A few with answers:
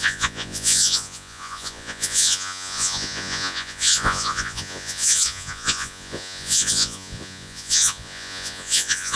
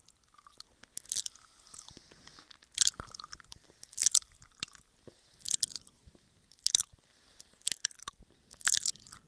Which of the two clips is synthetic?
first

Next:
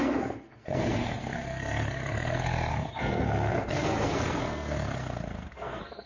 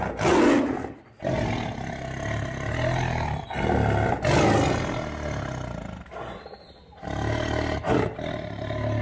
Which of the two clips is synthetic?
first